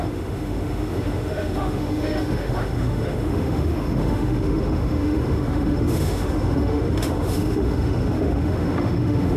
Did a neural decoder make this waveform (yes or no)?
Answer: yes